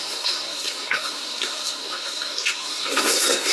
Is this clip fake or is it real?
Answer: fake